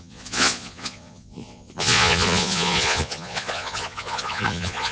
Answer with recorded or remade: remade